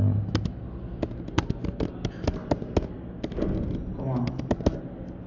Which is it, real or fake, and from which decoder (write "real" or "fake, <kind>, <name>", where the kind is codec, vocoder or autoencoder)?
real